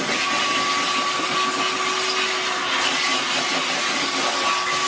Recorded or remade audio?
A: recorded